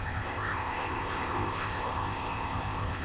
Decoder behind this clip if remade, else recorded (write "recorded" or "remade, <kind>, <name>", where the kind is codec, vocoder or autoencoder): remade, codec, ZipCodec